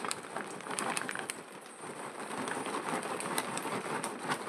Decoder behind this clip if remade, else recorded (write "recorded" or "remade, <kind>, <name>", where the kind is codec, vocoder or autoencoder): recorded